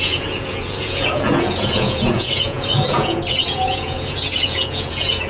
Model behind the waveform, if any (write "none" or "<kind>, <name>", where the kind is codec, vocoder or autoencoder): vocoder, Vocos